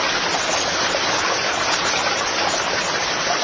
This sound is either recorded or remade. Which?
recorded